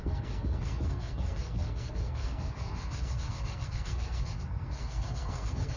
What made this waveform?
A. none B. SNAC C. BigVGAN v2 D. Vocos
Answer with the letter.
B